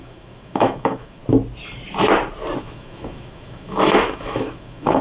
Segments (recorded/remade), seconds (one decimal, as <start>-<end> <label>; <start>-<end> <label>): 0.0-1.2 remade; 1.2-2.6 recorded; 2.6-5.0 remade